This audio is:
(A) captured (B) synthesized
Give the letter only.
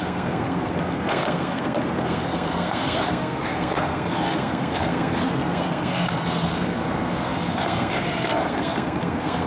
B